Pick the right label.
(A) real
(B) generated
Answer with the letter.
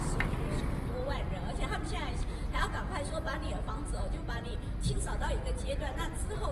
A